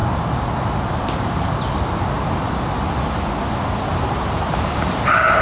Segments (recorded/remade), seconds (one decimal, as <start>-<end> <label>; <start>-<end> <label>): 0.0-3.9 recorded; 3.9-5.4 remade